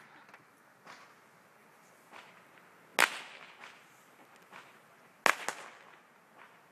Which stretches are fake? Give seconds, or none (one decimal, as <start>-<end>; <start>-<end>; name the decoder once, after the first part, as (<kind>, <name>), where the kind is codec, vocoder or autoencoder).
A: none